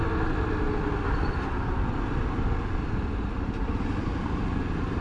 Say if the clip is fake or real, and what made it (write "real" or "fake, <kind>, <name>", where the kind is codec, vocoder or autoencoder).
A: real